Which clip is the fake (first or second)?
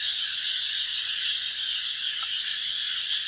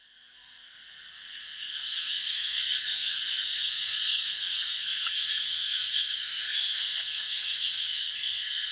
second